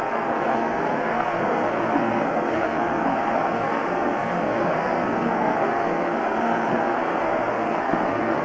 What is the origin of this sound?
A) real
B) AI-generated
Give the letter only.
B